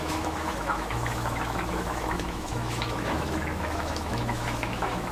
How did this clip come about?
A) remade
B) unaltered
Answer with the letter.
A